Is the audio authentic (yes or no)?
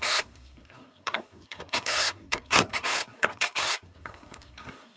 no